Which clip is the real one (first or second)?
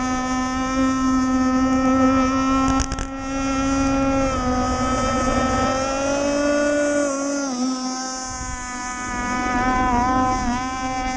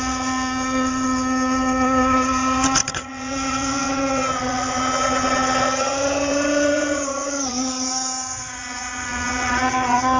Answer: first